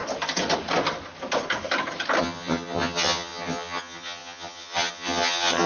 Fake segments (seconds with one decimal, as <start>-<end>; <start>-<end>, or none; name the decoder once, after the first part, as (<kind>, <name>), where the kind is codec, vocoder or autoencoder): 2.2-5.7 (vocoder, HiFi-GAN)